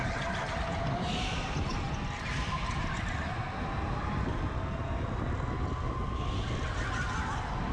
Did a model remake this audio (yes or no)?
no